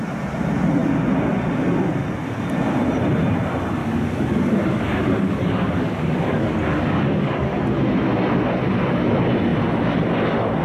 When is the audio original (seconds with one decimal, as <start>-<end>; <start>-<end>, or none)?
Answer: 0.0-3.8; 7.6-10.6